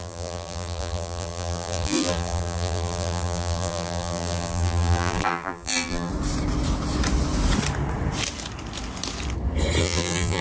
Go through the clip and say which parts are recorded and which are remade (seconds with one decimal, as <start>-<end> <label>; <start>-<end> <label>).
0.0-6.1 remade; 6.1-9.8 recorded; 9.8-10.4 remade